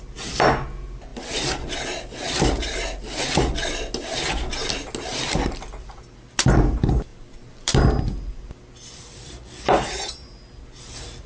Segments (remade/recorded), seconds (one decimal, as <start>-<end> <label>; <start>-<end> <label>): 0.0-7.1 recorded; 7.1-10.6 remade; 10.6-11.3 recorded